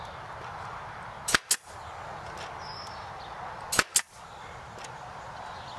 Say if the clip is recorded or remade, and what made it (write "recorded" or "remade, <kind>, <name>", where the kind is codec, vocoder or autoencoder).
recorded